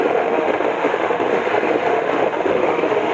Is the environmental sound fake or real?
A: fake